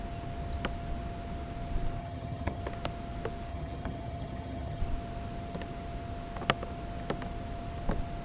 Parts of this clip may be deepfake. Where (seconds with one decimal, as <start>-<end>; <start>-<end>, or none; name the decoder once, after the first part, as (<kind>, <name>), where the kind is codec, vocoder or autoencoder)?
2.0-2.6 (vocoder, HiFi-GAN); 3.5-4.8

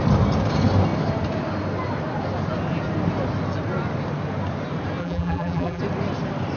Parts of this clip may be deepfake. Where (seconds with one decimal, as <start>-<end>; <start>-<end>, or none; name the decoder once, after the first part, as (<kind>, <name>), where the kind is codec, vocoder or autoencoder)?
5.0-5.8 (vocoder, BigVGAN v2)